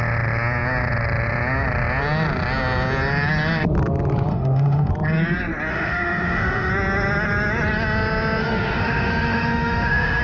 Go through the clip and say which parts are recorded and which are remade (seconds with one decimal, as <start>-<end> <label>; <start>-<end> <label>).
0.0-4.3 recorded; 4.3-4.9 remade; 4.9-5.7 recorded; 5.7-6.7 remade; 6.7-8.4 recorded; 8.4-10.2 remade